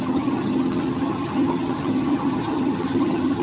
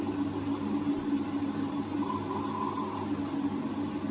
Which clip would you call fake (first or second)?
first